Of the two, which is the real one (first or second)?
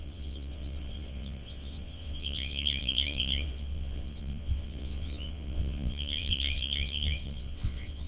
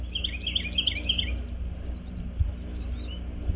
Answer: second